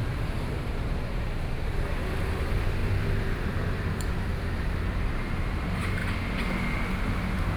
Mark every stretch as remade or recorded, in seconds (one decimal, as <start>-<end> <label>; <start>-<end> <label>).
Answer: 0.0-0.5 recorded; 0.5-6.0 remade; 6.0-6.9 recorded; 6.9-7.6 remade